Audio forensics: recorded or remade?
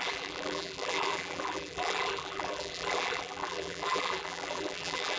remade